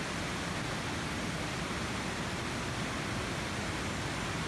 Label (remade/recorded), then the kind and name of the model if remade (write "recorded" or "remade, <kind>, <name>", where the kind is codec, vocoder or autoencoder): recorded